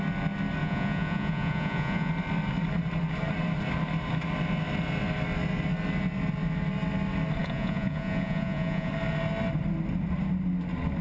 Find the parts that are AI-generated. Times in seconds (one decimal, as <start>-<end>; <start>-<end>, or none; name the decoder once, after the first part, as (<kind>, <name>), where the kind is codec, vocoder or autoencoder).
0.6-2.1 (vocoder, Vocos); 7.4-8.9